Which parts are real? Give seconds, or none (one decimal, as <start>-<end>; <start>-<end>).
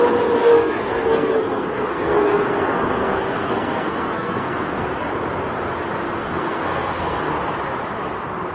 0.0-0.4; 5.1-6.2; 7.3-8.5